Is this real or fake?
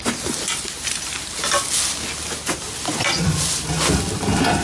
real